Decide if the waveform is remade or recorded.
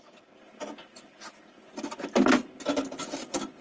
recorded